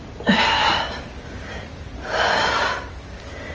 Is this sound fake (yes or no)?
yes